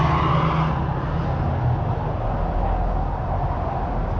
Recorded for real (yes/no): yes